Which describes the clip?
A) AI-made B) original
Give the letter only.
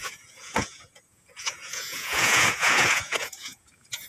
A